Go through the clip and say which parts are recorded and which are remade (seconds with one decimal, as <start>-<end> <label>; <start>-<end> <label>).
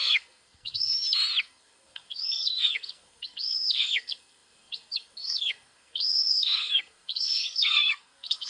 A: 0.0-0.9 remade; 0.9-1.4 recorded; 1.4-8.5 remade